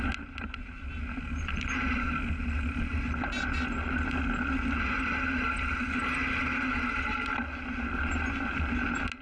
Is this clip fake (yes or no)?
no